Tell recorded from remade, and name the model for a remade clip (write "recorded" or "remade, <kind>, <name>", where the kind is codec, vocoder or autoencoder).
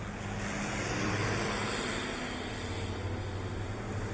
recorded